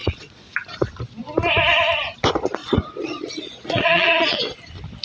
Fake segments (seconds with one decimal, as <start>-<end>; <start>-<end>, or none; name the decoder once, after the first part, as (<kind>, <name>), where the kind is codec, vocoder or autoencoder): 0.0-0.5 (vocoder, Vocos); 2.6-4.6